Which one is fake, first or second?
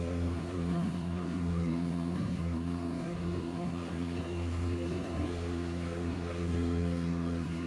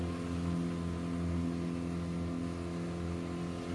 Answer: first